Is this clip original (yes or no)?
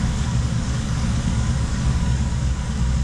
no